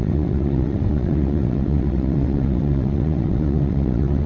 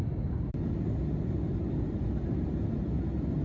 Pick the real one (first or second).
second